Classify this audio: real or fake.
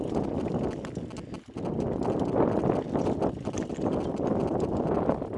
real